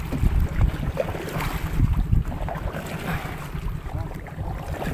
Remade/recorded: recorded